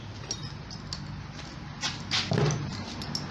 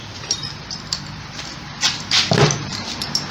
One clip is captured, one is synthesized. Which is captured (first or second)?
first